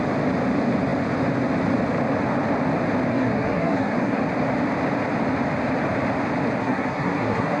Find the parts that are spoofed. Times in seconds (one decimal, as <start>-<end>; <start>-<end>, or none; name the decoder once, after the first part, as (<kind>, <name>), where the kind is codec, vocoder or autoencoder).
3.1-4.2 (codec, SNAC); 6.6-7.6